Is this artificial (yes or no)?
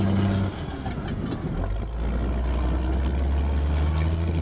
no